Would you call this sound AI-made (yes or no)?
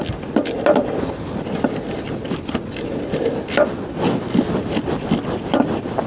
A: no